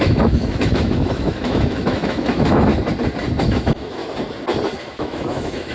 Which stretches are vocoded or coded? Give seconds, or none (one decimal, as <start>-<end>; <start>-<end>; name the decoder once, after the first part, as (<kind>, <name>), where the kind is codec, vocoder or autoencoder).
0.0-2.7 (autoencoder, DAC-VAE); 3.4-4.0; 4.8-5.7

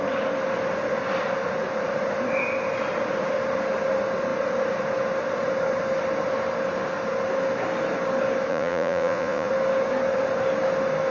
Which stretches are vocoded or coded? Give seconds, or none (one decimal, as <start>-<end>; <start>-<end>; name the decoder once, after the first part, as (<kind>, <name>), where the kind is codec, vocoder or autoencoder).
8.5-9.5 (vocoder, Vocos)

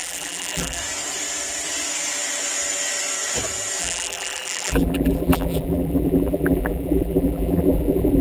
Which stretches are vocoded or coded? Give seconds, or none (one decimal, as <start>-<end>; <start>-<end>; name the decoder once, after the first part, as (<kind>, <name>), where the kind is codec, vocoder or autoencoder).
0.0-0.8 (vocoder, BigVGAN v2); 3.8-8.2

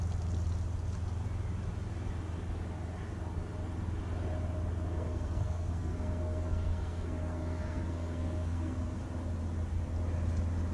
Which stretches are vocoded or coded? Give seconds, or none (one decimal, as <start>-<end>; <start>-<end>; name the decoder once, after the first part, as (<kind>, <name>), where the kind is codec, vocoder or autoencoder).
4.9-9.0 (codec, SNAC)

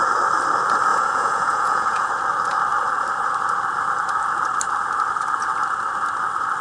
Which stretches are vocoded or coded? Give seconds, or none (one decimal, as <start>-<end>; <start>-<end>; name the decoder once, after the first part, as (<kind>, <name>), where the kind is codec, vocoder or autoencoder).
0.9-2.1 (vocoder, Vocos)

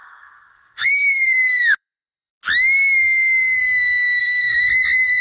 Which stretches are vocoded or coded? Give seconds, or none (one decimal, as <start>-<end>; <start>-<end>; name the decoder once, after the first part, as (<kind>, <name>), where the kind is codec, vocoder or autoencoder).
0.0-2.3 (codec, SNAC); 4.2-4.7